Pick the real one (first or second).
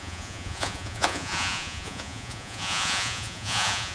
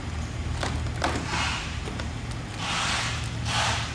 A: second